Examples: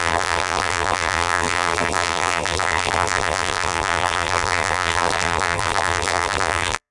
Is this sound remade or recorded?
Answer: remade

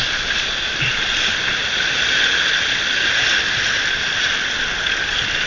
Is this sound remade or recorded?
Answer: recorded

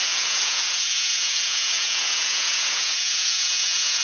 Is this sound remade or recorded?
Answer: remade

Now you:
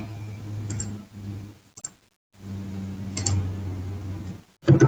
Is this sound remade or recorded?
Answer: recorded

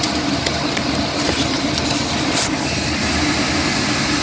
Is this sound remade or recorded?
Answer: recorded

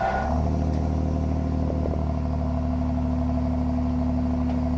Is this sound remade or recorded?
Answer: recorded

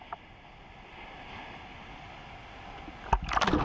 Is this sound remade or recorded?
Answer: recorded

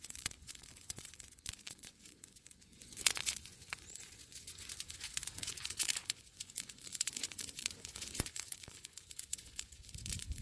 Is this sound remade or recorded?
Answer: remade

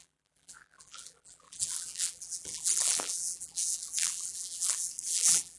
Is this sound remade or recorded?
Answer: remade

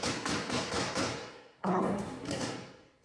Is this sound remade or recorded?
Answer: remade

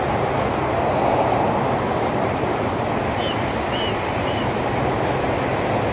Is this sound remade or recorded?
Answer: recorded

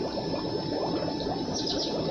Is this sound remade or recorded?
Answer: recorded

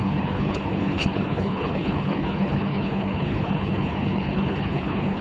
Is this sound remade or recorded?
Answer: remade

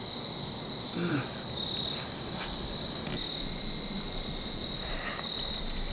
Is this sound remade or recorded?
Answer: recorded